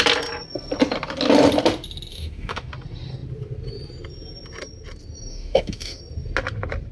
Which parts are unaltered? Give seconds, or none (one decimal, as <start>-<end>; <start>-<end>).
0.0-2.1; 2.7-5.3; 6.0-6.9